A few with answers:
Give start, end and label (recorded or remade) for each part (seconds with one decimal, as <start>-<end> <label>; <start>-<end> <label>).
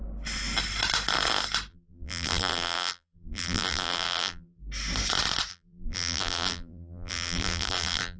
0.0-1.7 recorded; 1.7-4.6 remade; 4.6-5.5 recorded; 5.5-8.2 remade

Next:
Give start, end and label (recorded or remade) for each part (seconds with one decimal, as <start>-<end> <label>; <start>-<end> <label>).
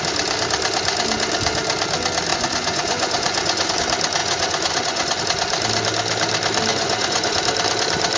0.0-2.3 recorded; 2.3-3.7 remade; 3.7-4.2 recorded; 4.2-5.2 remade; 5.2-6.7 recorded; 6.7-7.4 remade; 7.4-8.2 recorded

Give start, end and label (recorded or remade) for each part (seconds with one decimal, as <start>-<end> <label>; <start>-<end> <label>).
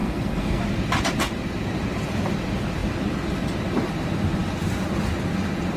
0.0-0.6 remade; 0.6-5.8 recorded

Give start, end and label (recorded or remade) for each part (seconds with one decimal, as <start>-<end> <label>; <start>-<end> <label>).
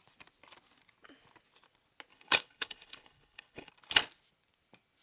0.0-2.1 recorded; 2.1-3.7 remade; 3.7-5.0 recorded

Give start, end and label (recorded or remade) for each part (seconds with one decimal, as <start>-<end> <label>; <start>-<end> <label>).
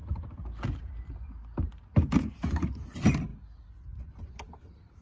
0.0-5.0 recorded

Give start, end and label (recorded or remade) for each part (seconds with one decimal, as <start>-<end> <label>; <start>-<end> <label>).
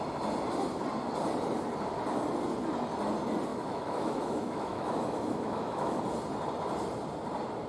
0.0-3.5 recorded; 3.5-6.0 remade; 6.0-7.7 recorded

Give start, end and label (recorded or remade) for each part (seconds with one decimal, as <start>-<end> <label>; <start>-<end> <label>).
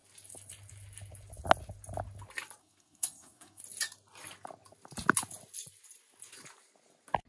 0.0-2.6 recorded; 2.6-3.6 remade; 3.6-7.3 recorded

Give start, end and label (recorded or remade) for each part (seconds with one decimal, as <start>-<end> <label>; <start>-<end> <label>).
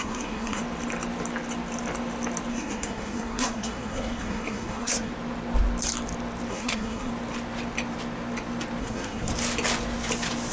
0.0-0.6 remade; 0.6-2.5 recorded; 2.5-5.1 remade; 5.1-6.5 recorded; 6.5-7.1 remade; 7.1-8.8 recorded; 8.8-9.3 remade; 9.3-10.5 recorded